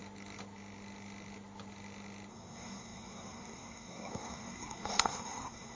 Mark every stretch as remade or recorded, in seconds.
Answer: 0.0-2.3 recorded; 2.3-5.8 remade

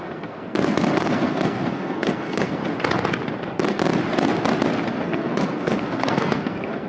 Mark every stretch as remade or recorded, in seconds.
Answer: 0.0-2.6 remade; 2.6-3.4 recorded; 3.4-3.8 remade; 3.8-4.9 recorded; 4.9-6.9 remade

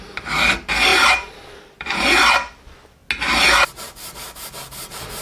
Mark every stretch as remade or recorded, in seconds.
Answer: 0.0-0.9 recorded; 0.9-2.1 remade; 2.1-5.2 recorded

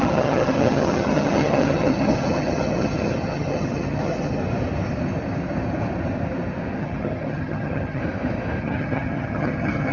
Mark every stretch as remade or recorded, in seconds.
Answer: 0.0-4.4 remade; 4.4-6.8 recorded; 6.8-8.0 remade; 8.0-8.6 recorded; 8.6-9.9 remade

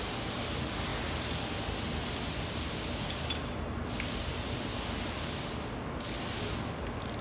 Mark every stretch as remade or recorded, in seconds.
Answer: 0.0-7.2 recorded

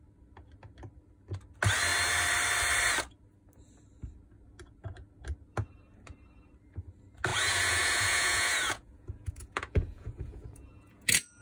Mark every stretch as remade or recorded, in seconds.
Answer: 0.0-7.3 recorded; 7.3-11.4 remade

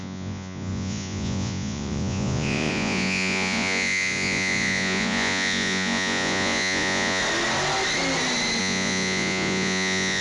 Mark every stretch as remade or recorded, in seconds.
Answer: 0.0-7.2 remade; 7.2-8.6 recorded; 8.6-10.2 remade

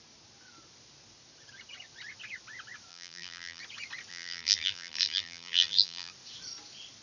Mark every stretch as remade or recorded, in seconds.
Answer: 0.0-2.9 recorded; 2.9-3.6 remade; 3.6-4.1 recorded; 4.1-6.1 remade; 6.1-7.0 recorded